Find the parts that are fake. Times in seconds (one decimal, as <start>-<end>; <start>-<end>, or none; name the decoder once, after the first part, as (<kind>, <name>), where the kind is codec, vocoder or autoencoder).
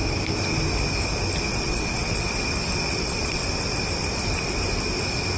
1.5-2.2 (vocoder, WaveNeXt); 2.9-3.4